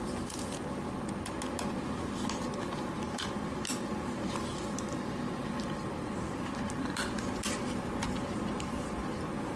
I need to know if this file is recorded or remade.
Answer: recorded